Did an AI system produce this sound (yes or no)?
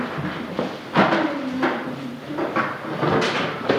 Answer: no